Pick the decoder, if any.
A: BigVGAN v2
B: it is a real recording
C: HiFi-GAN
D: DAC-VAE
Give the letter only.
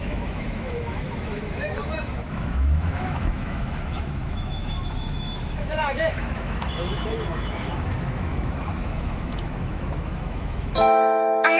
D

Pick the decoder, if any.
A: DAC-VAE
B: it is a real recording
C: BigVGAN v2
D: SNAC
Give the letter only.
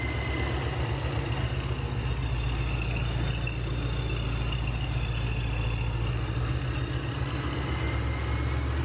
B